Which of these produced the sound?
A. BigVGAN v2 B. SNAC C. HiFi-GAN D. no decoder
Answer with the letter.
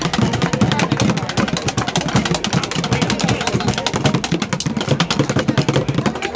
D